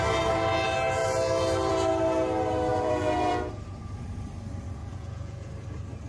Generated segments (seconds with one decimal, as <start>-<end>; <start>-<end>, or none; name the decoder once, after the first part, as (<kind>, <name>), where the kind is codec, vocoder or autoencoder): 2.7-3.5 (vocoder, Vocos); 4.8-5.5